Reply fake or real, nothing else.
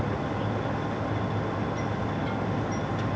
real